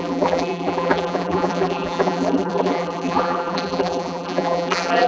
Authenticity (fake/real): fake